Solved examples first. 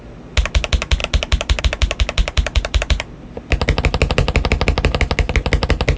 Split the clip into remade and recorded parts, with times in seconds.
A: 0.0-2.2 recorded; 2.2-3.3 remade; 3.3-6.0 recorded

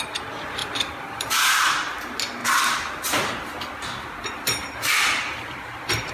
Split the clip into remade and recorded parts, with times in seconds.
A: 0.0-0.6 recorded; 0.6-1.3 remade; 1.3-4.6 recorded; 4.6-6.1 remade

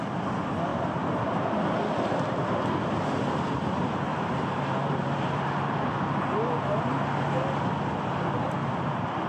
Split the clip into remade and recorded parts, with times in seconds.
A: 0.0-0.7 recorded; 0.7-1.2 remade; 1.2-4.1 recorded; 4.1-5.6 remade; 5.6-8.6 recorded; 8.6-9.3 remade

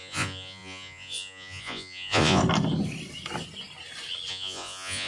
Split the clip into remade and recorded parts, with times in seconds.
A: 0.0-2.4 remade; 2.4-4.3 recorded; 4.3-5.1 remade

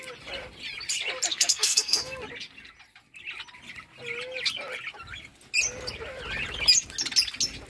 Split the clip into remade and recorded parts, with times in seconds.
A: 0.0-1.3 recorded; 1.3-2.2 remade; 2.2-7.7 recorded

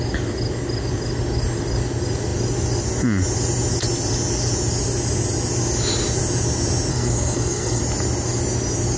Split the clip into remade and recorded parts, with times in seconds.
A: 0.0-6.9 recorded; 6.9-7.8 remade; 7.8-9.0 recorded

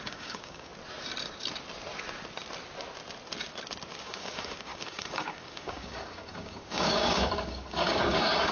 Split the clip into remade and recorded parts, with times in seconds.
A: 0.0-0.7 remade; 0.7-4.0 recorded; 4.0-8.5 remade